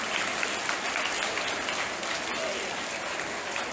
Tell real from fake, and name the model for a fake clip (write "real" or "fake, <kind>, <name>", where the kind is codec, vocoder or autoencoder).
real